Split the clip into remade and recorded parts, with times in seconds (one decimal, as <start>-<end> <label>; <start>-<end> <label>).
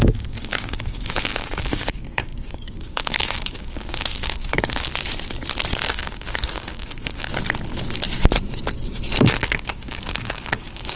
0.0-4.9 remade; 4.9-5.9 recorded; 5.9-7.3 remade; 7.3-9.2 recorded; 9.2-11.0 remade